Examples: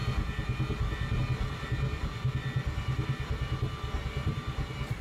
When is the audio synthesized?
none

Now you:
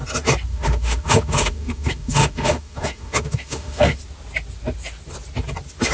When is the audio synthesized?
0.5-4.0 (autoencoder, DAC-VAE)